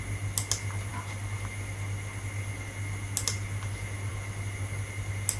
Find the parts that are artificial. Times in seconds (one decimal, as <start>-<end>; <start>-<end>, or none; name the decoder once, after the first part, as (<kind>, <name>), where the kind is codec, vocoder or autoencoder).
none